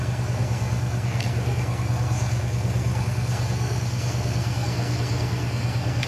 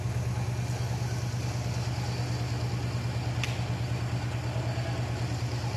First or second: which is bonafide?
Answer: second